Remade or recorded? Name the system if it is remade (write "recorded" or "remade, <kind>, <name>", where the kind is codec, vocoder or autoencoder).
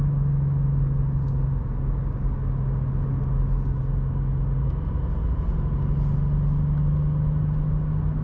recorded